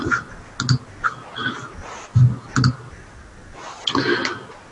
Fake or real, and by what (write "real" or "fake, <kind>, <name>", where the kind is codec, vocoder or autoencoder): real